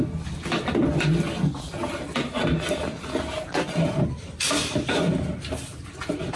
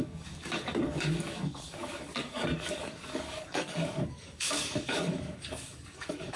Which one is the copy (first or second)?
second